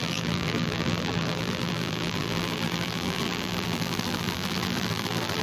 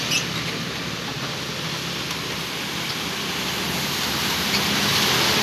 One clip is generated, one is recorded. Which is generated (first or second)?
first